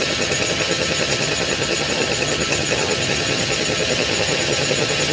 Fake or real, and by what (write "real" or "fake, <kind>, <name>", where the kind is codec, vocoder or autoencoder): fake, vocoder, HiFi-GAN